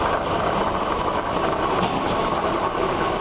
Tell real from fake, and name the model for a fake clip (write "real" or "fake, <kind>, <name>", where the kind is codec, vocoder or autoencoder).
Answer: real